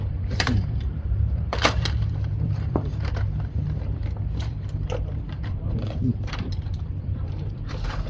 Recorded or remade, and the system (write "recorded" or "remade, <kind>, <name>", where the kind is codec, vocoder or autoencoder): remade, vocoder, BigVGAN v2